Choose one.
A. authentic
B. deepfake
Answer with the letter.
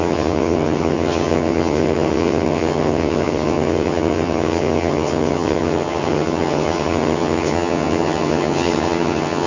B